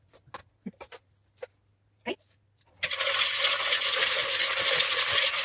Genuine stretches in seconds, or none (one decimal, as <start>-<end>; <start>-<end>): 0.0-5.4